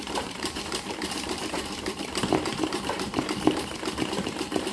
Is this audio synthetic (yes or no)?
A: yes